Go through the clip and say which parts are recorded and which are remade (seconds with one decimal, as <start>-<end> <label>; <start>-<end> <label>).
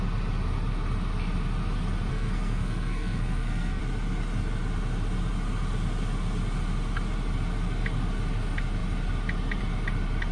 0.0-2.1 recorded; 2.1-3.8 remade; 3.8-10.3 recorded